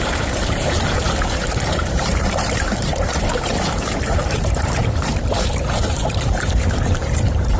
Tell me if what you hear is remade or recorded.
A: remade